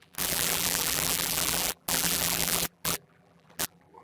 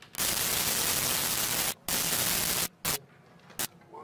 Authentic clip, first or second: second